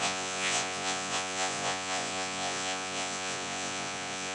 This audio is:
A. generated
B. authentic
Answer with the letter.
A